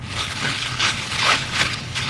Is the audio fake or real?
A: fake